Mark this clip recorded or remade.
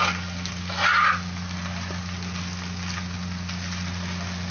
recorded